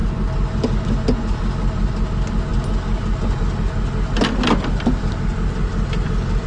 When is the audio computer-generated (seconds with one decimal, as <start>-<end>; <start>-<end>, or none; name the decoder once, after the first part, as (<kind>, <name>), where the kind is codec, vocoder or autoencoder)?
none